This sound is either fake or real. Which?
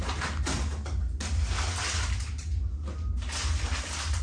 real